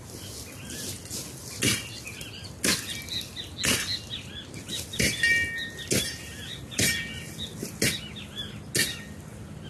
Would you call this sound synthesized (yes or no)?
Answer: no